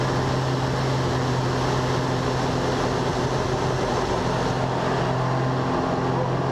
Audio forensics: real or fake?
real